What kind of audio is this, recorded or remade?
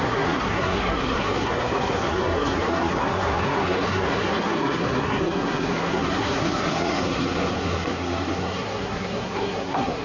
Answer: remade